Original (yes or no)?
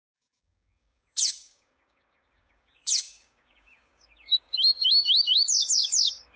no